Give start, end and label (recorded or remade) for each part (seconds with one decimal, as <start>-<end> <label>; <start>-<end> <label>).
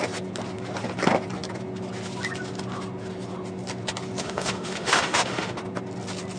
0.0-4.2 recorded; 4.2-5.6 remade; 5.6-6.4 recorded